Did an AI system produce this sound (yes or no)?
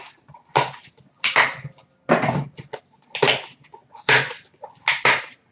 no